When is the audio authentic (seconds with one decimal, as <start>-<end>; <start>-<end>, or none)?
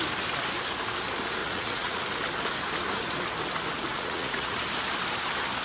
0.0-1.4; 2.0-3.9; 4.6-5.6